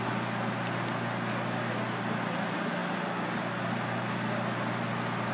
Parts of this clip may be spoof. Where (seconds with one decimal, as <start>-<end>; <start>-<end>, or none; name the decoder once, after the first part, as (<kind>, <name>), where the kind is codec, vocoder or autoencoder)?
none